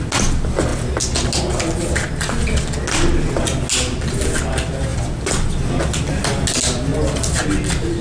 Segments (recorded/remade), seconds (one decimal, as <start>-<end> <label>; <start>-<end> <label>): 0.0-8.0 recorded